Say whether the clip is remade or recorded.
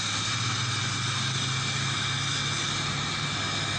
recorded